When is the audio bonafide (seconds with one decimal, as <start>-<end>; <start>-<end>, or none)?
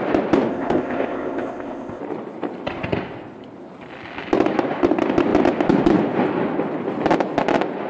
0.0-0.5; 2.0-7.9